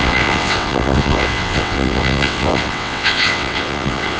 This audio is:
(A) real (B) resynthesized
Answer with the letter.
B